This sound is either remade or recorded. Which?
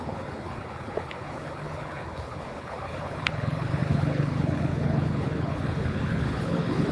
remade